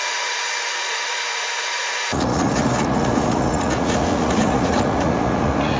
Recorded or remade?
remade